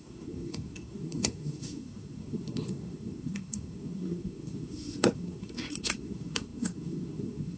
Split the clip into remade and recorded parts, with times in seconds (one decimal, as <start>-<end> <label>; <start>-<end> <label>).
0.0-7.6 remade